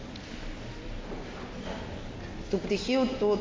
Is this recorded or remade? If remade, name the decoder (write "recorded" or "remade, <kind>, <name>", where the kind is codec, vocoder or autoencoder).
recorded